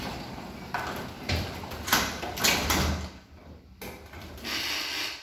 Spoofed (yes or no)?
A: no